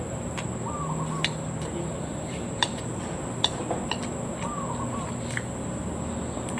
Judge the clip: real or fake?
real